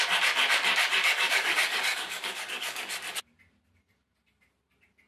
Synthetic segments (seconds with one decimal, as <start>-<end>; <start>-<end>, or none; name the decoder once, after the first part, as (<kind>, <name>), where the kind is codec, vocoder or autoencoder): 1.0-2.9 (codec, DAC)